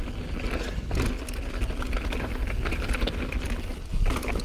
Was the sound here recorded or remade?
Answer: recorded